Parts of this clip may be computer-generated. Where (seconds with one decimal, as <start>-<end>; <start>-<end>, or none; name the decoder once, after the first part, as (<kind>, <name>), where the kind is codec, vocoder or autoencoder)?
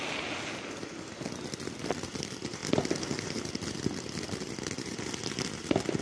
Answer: none